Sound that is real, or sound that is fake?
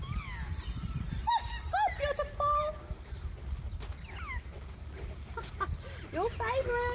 real